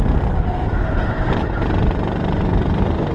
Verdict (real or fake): real